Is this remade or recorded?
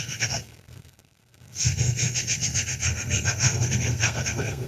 remade